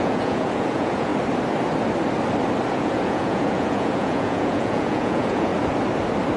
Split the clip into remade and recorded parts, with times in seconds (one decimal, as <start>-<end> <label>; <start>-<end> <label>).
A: 0.0-1.1 remade; 1.1-2.7 recorded; 2.7-5.5 remade; 5.5-6.4 recorded